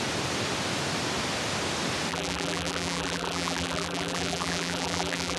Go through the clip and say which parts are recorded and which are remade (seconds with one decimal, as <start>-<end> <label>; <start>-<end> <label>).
0.0-2.1 recorded; 2.1-5.4 remade